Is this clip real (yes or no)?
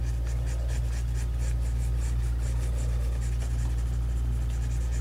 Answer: yes